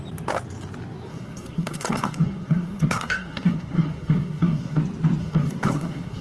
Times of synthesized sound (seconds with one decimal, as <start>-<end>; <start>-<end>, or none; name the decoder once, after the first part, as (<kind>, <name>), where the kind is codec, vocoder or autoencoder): 1.1-4.8 (codec, SNAC); 5.2-6.2